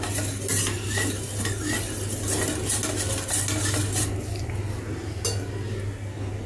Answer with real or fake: real